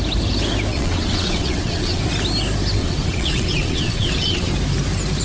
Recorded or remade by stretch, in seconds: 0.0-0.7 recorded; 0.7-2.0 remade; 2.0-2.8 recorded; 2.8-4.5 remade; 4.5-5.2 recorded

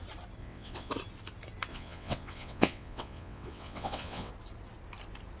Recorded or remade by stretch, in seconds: 0.0-0.4 recorded; 0.4-0.9 remade; 0.9-1.7 recorded; 1.7-4.3 remade; 4.3-5.4 recorded

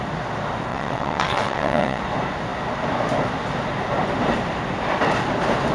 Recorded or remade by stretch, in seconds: 0.0-0.7 recorded; 0.7-2.0 remade; 2.0-5.7 recorded

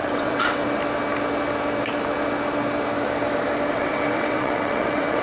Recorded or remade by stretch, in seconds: 0.0-0.6 remade; 0.6-3.7 recorded; 3.7-5.2 remade